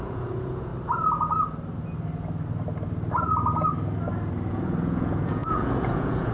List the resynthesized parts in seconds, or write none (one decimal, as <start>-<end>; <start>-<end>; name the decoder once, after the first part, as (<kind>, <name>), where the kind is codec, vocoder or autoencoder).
0.0-0.7 (vocoder, Vocos); 4.5-6.3